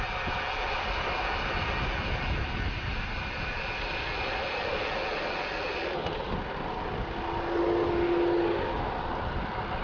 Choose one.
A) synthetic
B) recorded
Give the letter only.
B